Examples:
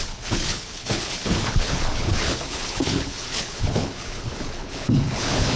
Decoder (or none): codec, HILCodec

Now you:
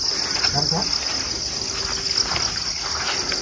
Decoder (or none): none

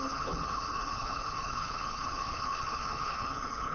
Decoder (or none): codec, HILCodec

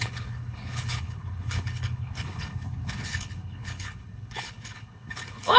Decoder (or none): codec, HILCodec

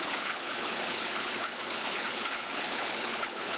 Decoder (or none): codec, HILCodec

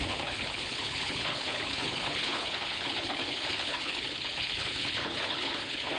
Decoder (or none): codec, HILCodec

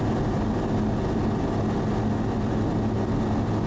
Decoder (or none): none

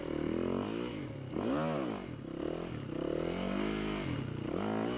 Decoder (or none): none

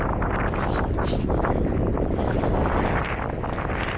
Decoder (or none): none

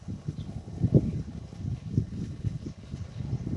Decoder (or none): codec, HILCodec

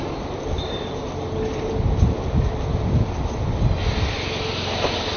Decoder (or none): none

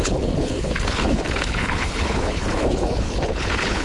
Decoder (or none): codec, HILCodec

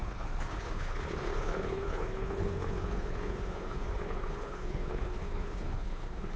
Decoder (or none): codec, HILCodec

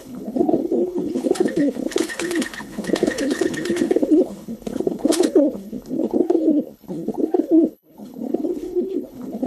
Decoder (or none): codec, HILCodec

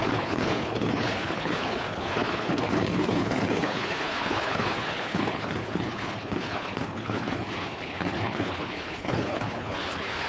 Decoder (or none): codec, HILCodec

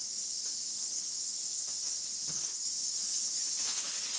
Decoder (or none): codec, HILCodec